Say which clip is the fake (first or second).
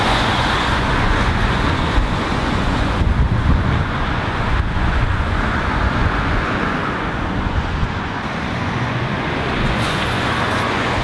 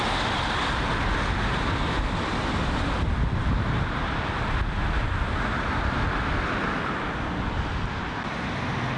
first